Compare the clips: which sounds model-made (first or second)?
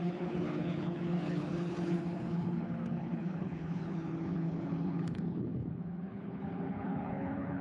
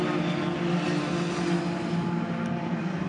first